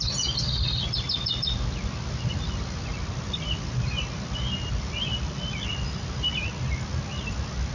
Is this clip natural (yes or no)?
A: yes